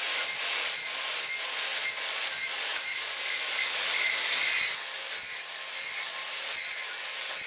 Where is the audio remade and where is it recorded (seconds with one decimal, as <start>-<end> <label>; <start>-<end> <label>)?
0.0-7.5 recorded